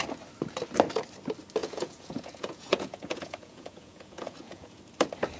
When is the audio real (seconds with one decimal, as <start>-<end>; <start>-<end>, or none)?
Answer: 0.0-1.6; 4.8-5.4